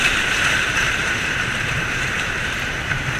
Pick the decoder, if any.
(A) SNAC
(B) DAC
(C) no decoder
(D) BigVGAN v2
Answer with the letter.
D